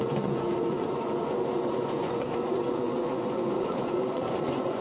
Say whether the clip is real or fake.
fake